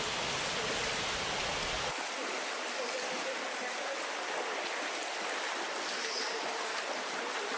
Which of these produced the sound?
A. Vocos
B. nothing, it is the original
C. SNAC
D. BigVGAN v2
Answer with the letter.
B